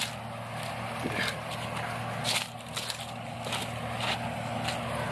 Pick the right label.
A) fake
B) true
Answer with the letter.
B